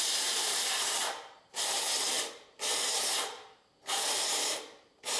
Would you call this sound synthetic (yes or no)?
yes